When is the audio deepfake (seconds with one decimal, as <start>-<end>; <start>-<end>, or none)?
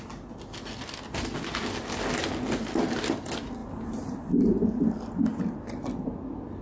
3.6-4.3